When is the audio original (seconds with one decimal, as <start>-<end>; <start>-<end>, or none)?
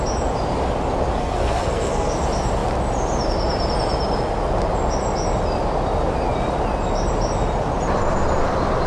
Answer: 0.0-1.2; 2.1-8.9